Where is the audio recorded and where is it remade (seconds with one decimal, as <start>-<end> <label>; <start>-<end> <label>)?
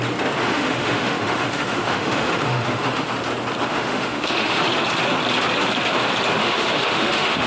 0.0-0.4 recorded; 0.4-3.1 remade; 3.1-3.7 recorded; 3.7-4.7 remade; 4.7-6.4 recorded; 6.4-7.5 remade